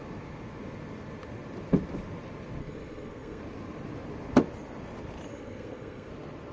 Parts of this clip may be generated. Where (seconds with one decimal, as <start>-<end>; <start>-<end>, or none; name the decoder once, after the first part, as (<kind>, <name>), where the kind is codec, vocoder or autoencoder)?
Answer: 2.6-3.4 (codec, SNAC); 5.3-6.1